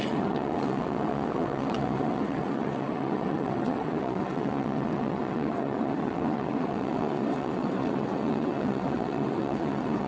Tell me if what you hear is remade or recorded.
remade